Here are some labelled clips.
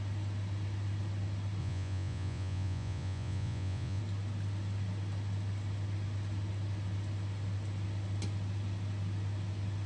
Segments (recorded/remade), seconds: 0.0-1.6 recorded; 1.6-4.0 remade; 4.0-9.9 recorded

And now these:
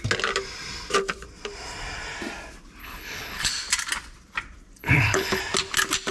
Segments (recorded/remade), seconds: 0.0-2.8 recorded; 2.8-3.5 remade; 3.5-4.8 recorded; 4.8-5.4 remade; 5.4-6.1 recorded

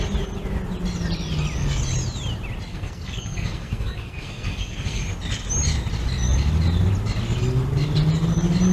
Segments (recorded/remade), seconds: 0.0-2.7 recorded; 2.7-5.0 remade; 5.0-8.7 recorded

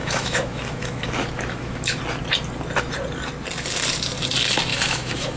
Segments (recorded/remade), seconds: 0.0-2.0 remade; 2.0-4.7 recorded; 4.7-5.4 remade

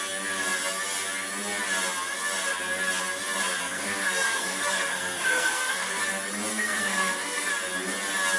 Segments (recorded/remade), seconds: 0.0-3.6 recorded; 3.6-6.0 remade; 6.0-6.5 recorded; 6.5-7.5 remade; 7.5-8.4 recorded

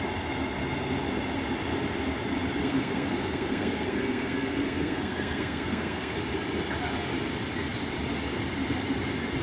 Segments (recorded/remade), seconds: 0.0-2.6 recorded; 2.6-6.2 remade; 6.2-9.4 recorded